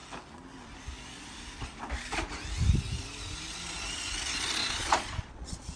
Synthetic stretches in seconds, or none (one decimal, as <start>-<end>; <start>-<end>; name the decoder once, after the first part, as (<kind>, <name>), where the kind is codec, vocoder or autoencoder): 4.6-5.8 (vocoder, Vocos)